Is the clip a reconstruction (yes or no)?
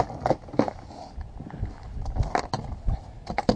no